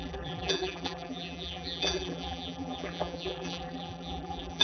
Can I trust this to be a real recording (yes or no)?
no